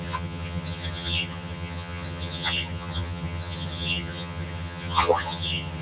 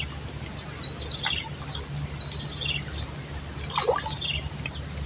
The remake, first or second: first